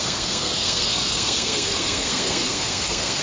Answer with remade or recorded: remade